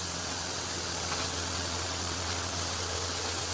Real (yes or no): no